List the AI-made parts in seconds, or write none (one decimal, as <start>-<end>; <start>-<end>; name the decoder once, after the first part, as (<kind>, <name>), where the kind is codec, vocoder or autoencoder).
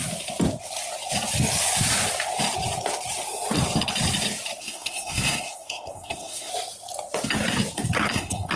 4.6-6.5 (codec, SNAC); 8.1-8.6